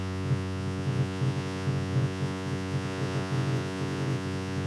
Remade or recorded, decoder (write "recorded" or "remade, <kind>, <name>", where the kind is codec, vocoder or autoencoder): remade, vocoder, Vocos